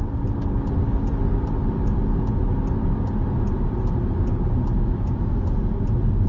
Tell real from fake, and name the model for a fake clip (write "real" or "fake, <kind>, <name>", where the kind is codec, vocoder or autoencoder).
real